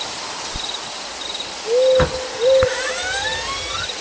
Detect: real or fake real